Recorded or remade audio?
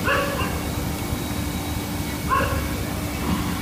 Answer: recorded